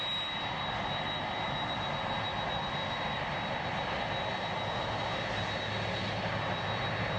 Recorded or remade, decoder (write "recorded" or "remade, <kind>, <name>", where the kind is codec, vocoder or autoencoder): recorded